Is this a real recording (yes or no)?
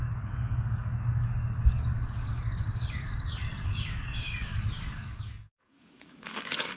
no